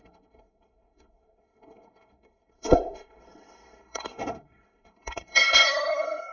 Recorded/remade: remade